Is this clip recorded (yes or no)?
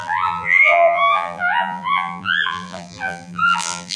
no